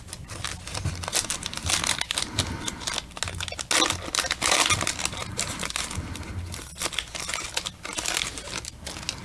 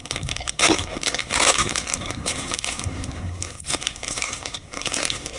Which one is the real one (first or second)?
first